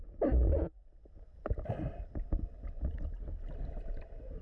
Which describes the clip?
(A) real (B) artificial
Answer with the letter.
A